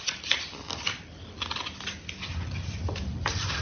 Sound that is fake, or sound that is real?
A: real